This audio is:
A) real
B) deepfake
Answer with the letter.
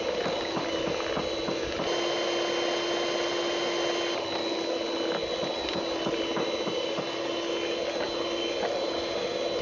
A